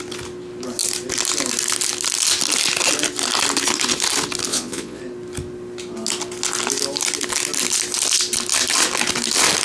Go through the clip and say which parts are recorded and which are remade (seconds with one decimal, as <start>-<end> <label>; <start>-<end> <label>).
0.0-4.5 recorded; 4.5-5.0 remade; 5.0-9.6 recorded